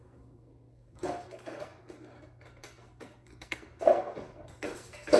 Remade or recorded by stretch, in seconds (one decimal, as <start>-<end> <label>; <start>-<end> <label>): 0.0-5.2 remade